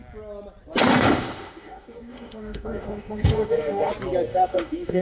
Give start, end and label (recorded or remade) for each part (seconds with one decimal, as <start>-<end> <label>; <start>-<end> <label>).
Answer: 0.0-0.9 recorded; 0.9-3.9 remade; 3.9-4.3 recorded; 4.3-5.0 remade